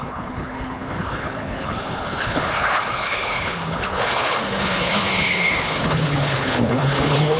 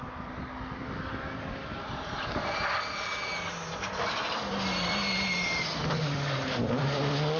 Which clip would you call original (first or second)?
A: second